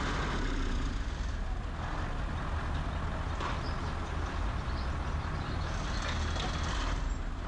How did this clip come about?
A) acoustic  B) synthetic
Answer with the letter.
A